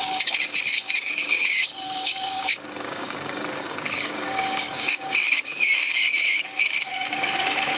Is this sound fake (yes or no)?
yes